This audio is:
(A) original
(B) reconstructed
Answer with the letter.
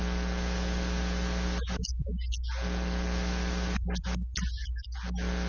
A